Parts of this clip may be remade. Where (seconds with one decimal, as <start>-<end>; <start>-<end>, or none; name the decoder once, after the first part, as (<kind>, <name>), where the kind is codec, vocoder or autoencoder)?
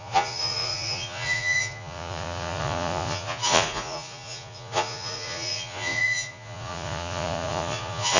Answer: 0.0-8.2 (vocoder, Vocos)